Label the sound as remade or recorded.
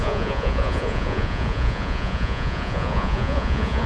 remade